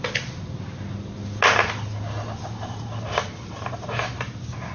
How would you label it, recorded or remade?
recorded